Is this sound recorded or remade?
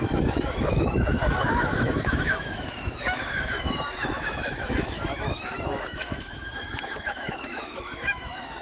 remade